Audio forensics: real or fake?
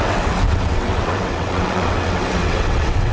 fake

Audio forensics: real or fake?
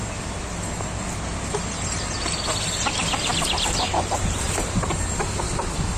real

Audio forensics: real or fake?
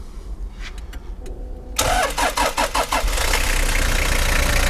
real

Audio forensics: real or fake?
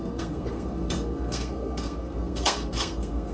fake